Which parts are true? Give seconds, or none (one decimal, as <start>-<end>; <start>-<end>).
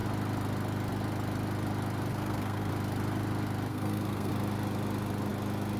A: 0.0-2.1; 2.7-3.7; 4.3-5.8